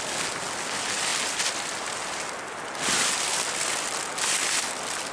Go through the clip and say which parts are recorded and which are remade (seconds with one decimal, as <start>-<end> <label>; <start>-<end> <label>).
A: 0.0-5.1 recorded